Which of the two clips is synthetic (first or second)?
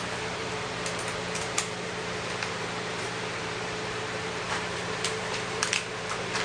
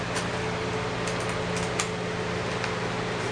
first